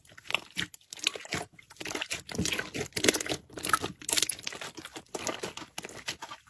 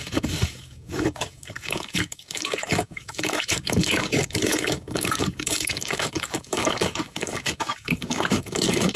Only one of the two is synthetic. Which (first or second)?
second